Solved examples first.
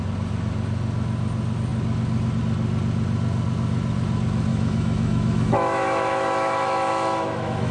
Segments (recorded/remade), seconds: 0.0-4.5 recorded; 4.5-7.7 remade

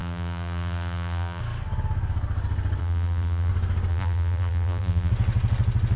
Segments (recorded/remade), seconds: 0.0-1.4 remade; 1.4-2.8 recorded; 2.8-3.5 remade; 3.5-3.9 recorded; 3.9-5.1 remade; 5.1-6.0 recorded

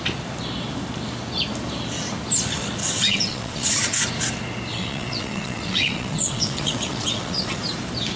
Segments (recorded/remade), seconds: 0.0-2.8 recorded; 2.8-4.0 remade; 4.0-4.7 recorded; 4.7-7.6 remade; 7.6-8.2 recorded

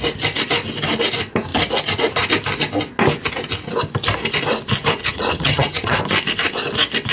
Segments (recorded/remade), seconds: 0.0-5.0 recorded; 5.0-6.0 remade; 6.0-7.1 recorded

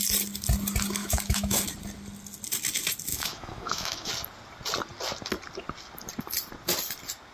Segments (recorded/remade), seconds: 0.0-1.0 recorded; 1.0-1.6 remade; 1.6-3.1 recorded; 3.1-4.1 remade; 4.1-7.3 recorded